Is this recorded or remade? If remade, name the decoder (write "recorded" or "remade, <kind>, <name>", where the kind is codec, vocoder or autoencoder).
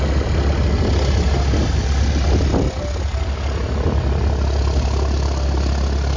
recorded